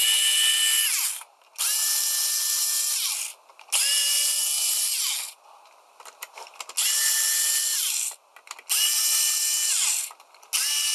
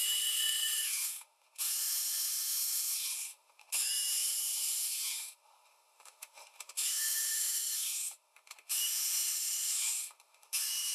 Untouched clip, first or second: first